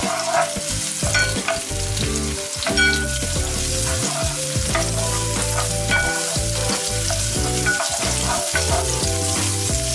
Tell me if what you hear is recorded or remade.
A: recorded